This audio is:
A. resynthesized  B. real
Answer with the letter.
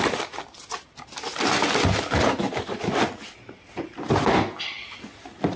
B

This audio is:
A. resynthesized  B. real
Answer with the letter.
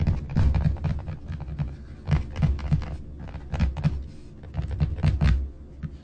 B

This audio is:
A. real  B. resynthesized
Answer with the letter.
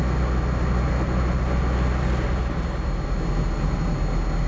A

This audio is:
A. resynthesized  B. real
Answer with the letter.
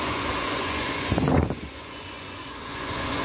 A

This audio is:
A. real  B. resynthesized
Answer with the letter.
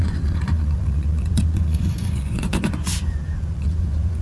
B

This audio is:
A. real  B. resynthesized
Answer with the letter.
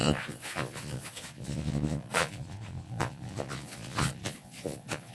B